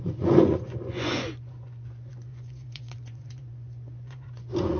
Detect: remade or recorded remade